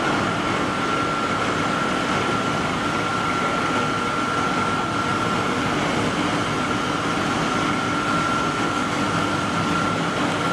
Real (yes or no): yes